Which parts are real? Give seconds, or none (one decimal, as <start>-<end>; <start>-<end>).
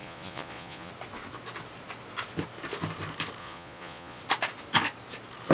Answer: 0.9-3.4; 4.2-5.5